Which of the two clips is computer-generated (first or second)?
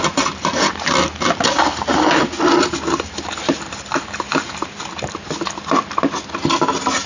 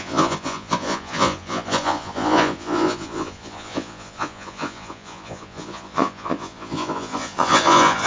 second